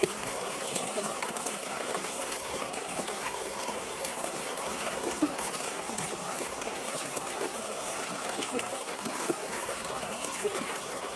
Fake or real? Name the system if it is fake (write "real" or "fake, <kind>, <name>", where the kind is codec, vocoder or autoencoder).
fake, codec, SNAC